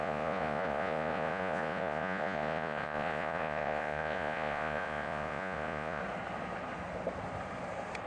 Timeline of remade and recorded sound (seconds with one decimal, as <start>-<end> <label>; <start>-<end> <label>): 0.0-6.0 remade; 6.0-8.1 recorded